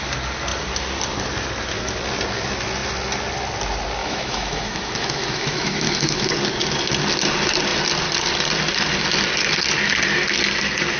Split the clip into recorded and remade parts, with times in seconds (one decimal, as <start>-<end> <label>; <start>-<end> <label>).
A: 0.0-4.0 recorded; 4.0-6.3 remade; 6.3-11.0 recorded